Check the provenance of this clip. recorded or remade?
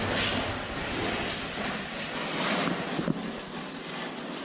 recorded